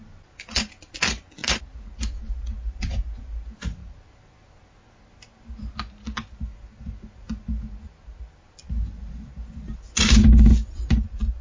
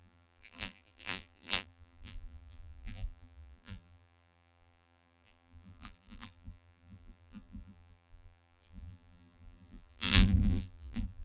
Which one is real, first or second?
first